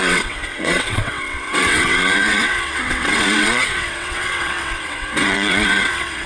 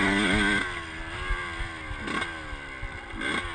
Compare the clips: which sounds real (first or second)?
second